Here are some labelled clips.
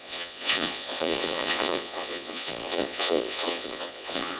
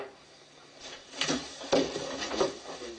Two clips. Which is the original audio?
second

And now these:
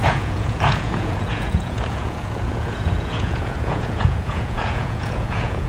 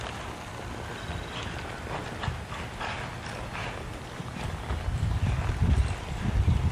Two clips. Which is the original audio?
second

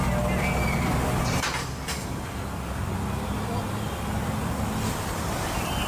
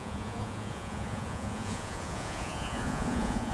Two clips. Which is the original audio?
first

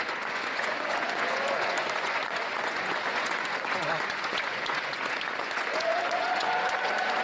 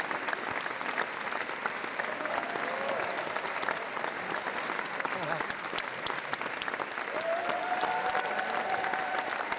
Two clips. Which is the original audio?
second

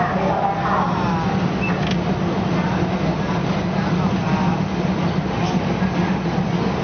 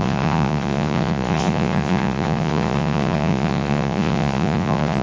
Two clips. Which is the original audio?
first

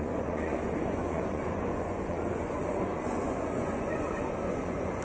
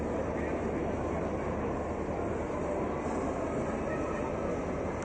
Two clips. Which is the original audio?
second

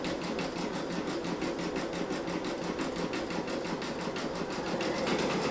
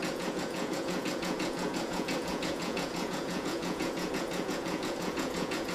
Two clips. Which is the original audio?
first